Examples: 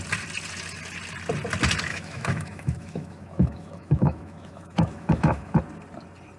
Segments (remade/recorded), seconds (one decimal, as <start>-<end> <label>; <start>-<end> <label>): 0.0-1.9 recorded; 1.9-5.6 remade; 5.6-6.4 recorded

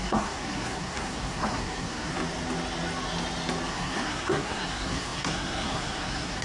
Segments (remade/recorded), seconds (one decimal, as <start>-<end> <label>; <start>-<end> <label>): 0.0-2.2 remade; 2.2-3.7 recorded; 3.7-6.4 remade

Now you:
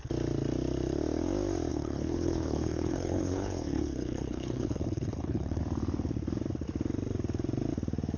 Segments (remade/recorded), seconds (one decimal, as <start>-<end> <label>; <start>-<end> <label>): 0.0-1.7 recorded; 1.7-5.6 remade; 5.6-8.2 recorded

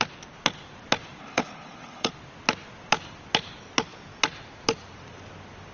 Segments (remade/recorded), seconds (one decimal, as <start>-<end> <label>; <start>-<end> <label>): 0.0-1.2 recorded; 1.2-2.1 remade; 2.1-5.7 recorded